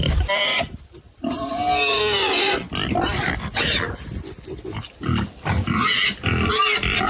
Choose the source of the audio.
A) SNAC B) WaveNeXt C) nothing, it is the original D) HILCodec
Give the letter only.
C